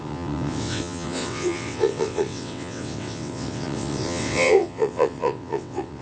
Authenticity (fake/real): fake